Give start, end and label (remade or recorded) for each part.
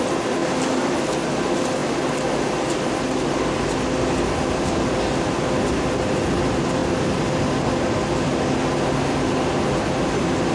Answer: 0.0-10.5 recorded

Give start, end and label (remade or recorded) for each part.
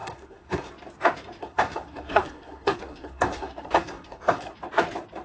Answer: 0.0-0.7 remade; 0.7-1.4 recorded; 1.4-4.5 remade; 4.5-5.2 recorded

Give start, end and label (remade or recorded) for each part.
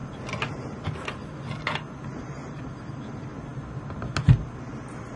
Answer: 0.0-5.2 recorded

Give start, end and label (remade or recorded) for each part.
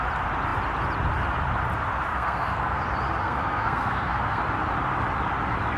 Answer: 0.0-2.1 recorded; 2.1-2.8 remade; 2.8-3.2 recorded; 3.2-4.4 remade; 4.4-5.8 recorded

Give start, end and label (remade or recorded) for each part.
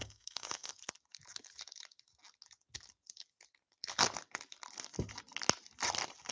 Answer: 0.0-0.8 remade; 0.8-6.3 recorded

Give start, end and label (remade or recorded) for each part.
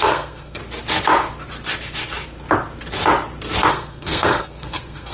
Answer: 0.0-0.6 remade; 0.6-3.7 recorded; 3.7-5.1 remade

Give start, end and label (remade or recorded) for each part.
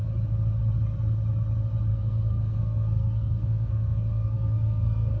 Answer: 0.0-1.9 recorded; 1.9-5.2 remade